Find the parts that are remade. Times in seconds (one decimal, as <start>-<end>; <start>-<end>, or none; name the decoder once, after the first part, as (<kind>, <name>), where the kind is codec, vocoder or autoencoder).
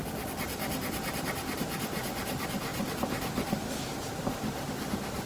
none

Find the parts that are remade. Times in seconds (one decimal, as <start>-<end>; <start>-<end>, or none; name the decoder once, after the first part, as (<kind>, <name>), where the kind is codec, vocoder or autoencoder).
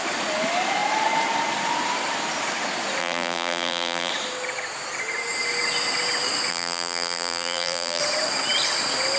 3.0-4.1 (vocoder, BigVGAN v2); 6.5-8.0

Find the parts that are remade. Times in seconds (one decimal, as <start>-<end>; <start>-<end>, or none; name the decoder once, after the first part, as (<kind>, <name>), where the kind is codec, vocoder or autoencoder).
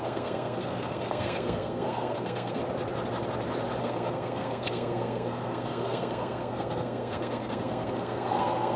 0.0-2.6 (codec, SNAC); 3.8-8.8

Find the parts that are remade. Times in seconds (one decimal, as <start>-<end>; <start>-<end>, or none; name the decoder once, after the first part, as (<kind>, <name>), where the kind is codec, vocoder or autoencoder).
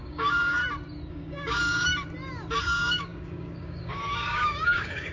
0.0-0.6 (codec, DAC); 1.1-1.9; 2.6-5.1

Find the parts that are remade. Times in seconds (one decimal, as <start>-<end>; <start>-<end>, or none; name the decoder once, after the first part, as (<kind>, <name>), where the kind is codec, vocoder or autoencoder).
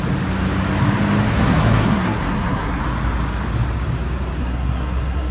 1.3-2.8 (codec, SNAC); 4.4-5.3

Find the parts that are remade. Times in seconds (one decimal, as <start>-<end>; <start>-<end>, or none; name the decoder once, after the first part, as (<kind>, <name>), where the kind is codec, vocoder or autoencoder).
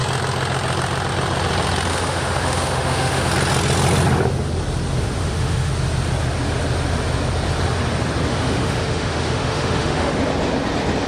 1.9-3.3 (autoencoder, DAC-VAE); 5.2-5.7; 8.3-10.2